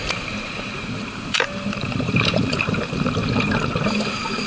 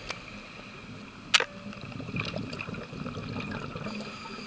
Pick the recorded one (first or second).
second